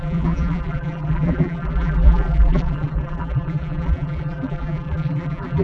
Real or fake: fake